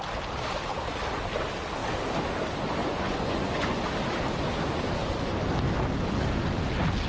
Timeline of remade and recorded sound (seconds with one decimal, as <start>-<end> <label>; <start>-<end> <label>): 0.0-2.8 recorded; 2.8-3.8 remade; 3.8-7.1 recorded